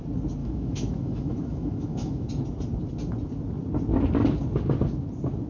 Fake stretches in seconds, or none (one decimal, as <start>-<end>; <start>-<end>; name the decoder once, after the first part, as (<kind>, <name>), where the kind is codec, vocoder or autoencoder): 0.4-2.3 (autoencoder, DAC-VAE)